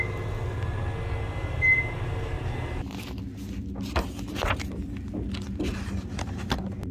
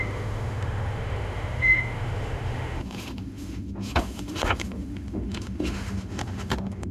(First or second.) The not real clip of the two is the second